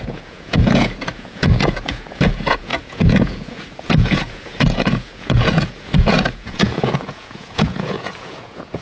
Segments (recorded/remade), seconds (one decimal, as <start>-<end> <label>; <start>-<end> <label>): 0.0-8.8 remade